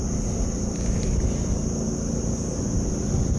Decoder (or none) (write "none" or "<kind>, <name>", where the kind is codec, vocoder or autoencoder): none